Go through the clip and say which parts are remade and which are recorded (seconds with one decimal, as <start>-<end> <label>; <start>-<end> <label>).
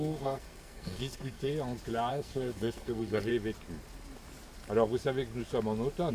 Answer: 0.0-1.5 remade; 1.5-2.1 recorded; 2.1-3.3 remade; 3.3-6.1 recorded